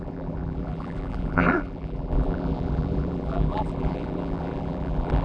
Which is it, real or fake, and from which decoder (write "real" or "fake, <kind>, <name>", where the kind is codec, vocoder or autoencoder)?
fake, vocoder, BigVGAN v2